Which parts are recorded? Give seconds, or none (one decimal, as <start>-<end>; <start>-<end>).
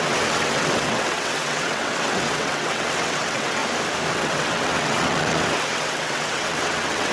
3.6-4.1